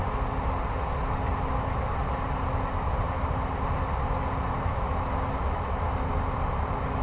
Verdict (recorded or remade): recorded